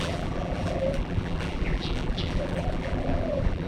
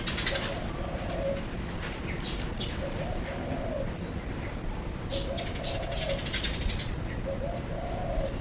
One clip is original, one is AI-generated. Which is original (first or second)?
second